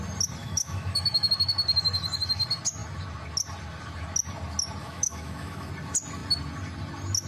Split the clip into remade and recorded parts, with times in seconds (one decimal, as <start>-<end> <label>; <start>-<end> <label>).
0.0-0.4 recorded; 0.4-1.3 remade; 1.3-4.8 recorded; 4.8-5.7 remade; 5.7-7.3 recorded